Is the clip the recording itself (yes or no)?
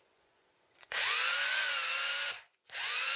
no